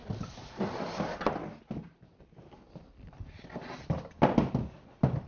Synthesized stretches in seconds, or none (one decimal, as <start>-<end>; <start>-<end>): none